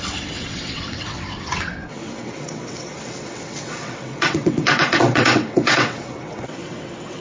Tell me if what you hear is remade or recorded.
remade